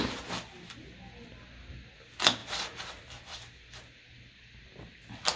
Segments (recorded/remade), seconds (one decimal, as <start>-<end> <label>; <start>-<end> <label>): 0.0-5.4 recorded